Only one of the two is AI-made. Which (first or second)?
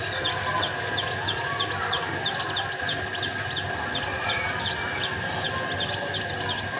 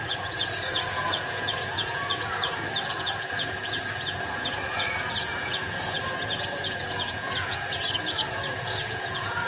second